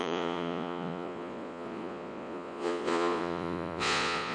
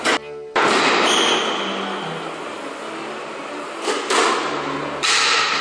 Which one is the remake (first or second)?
first